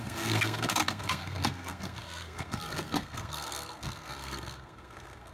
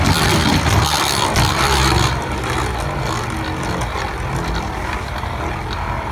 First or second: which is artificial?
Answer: first